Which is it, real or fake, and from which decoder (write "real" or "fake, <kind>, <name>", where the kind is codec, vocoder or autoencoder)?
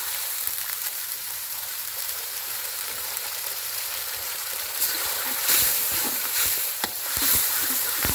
fake, vocoder, BigVGAN v2